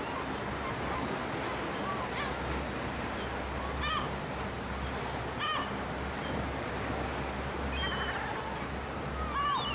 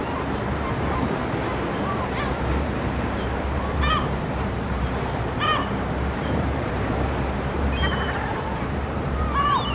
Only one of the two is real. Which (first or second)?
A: first